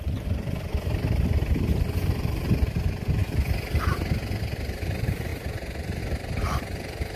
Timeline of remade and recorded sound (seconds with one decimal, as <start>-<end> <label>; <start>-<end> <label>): 0.0-7.2 recorded